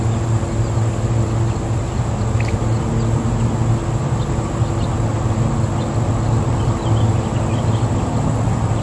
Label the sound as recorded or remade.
recorded